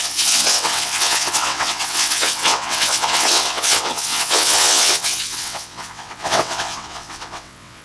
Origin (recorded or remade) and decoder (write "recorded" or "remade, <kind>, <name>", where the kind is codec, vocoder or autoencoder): remade, vocoder, WaveNeXt